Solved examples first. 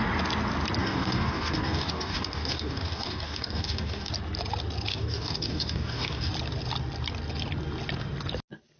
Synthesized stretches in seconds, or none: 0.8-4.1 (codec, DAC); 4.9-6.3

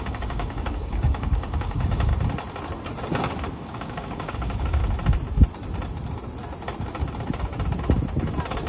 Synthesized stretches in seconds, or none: 0.0-2.1 (codec, DAC); 3.5-4.8

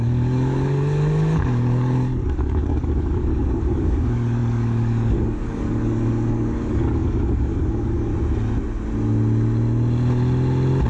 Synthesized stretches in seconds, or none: 0.0-8.1 (codec, DAC)

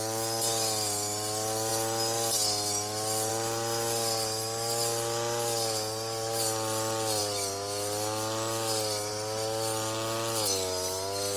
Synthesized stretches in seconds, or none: none

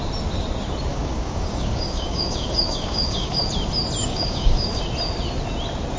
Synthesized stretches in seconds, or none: 0.9-3.4 (codec, DAC); 4.0-4.8